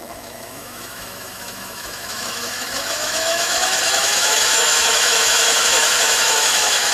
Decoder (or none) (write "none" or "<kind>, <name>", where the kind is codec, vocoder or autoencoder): autoencoder, DAC-VAE